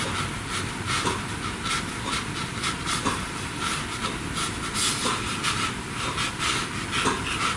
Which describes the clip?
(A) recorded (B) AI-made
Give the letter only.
A